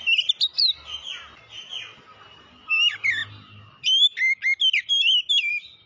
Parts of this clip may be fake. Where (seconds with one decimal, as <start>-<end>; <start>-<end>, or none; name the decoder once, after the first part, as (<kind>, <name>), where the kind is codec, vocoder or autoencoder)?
none